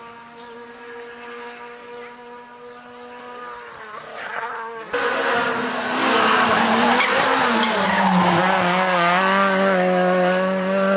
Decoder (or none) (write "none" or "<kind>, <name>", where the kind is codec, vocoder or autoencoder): none